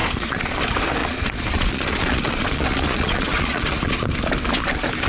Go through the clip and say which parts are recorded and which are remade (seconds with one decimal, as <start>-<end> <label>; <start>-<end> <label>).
0.0-0.6 remade; 0.6-1.0 recorded; 1.0-4.1 remade; 4.1-5.1 recorded